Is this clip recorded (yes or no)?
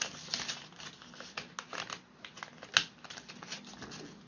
yes